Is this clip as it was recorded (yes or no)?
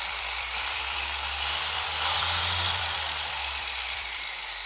no